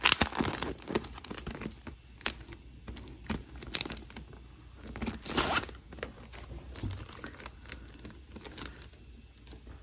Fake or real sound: real